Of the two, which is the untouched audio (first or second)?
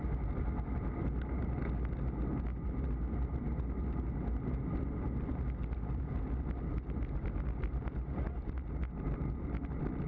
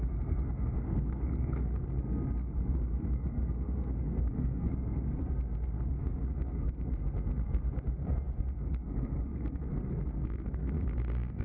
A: first